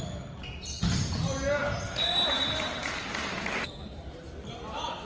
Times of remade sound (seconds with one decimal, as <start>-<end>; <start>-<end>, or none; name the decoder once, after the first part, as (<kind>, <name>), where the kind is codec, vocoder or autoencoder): none